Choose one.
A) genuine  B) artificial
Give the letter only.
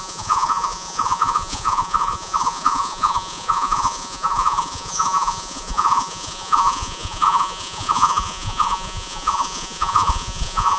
B